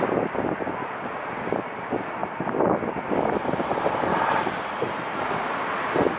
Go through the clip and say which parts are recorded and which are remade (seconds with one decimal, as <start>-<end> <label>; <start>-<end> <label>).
0.0-6.2 recorded